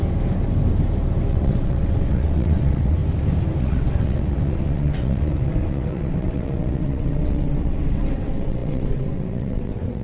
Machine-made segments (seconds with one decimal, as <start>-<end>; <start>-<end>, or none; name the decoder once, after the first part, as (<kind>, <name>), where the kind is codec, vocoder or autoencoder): 1.3-3.0 (vocoder, WaveNeXt); 3.6-10.0